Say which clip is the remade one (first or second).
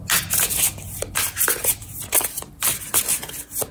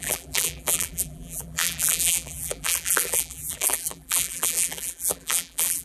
second